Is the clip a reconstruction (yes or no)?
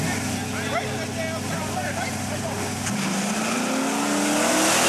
no